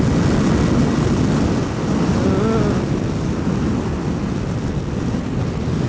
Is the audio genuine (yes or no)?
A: yes